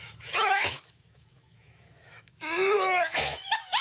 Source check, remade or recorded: remade